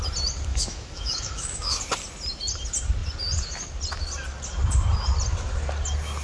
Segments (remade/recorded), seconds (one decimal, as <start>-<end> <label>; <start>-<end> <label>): 0.0-0.5 recorded; 0.5-1.8 remade; 1.8-6.2 recorded